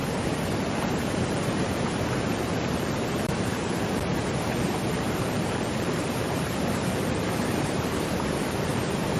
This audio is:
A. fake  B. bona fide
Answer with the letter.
A